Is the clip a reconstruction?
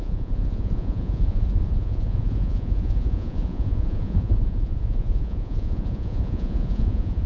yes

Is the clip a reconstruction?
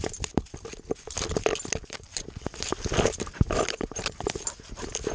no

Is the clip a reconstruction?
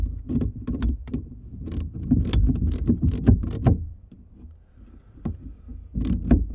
no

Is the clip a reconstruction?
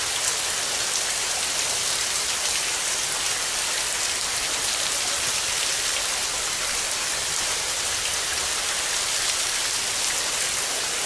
no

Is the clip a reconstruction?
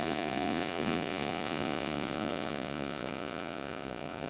yes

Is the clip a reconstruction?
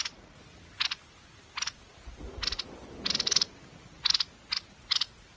no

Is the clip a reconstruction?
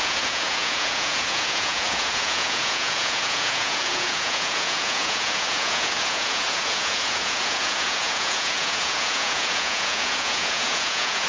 yes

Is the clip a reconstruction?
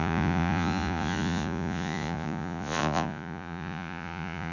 yes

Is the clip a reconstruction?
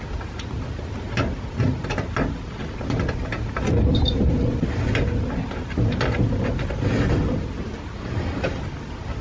no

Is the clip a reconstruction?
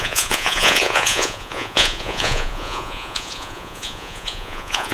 yes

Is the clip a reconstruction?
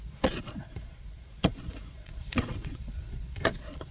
yes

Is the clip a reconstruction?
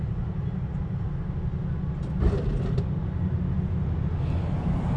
no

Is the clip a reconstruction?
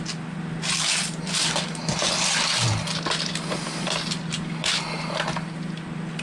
no